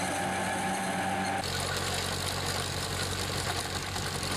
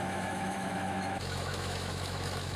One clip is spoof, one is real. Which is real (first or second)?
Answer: first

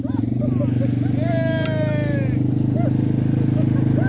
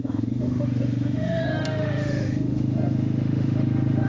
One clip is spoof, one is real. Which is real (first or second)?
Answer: first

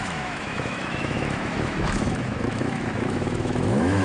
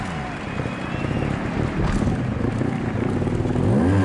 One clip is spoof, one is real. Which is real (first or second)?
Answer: second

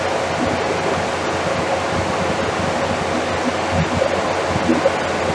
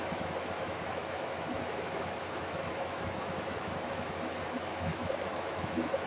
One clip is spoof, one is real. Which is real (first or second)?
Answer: first